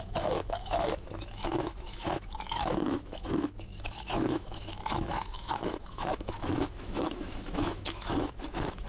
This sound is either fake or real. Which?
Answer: fake